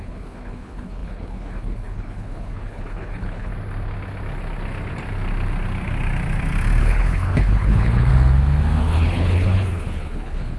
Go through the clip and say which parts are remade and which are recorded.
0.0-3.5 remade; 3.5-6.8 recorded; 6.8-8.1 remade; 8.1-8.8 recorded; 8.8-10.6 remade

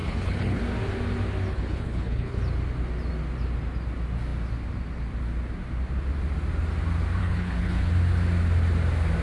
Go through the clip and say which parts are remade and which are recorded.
0.0-0.6 remade; 0.6-1.5 recorded; 1.5-2.4 remade; 2.4-7.2 recorded; 7.2-7.9 remade; 7.9-9.2 recorded

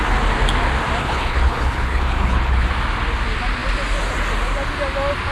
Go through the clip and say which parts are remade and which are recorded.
0.0-1.0 recorded; 1.0-2.7 remade; 2.7-5.3 recorded